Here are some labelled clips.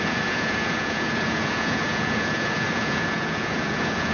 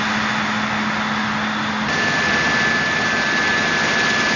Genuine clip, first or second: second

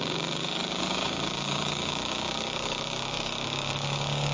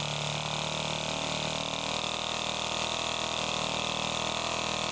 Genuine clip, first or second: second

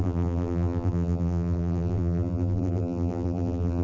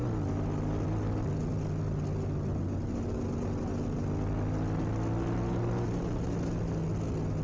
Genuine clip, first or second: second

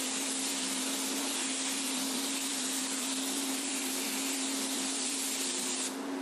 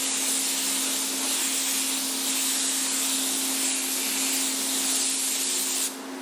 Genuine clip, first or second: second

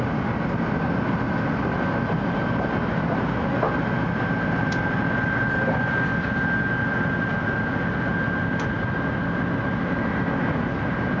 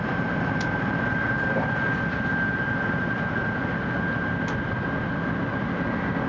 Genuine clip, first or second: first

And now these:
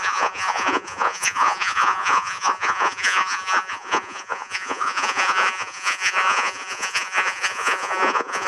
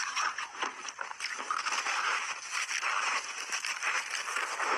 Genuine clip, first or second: second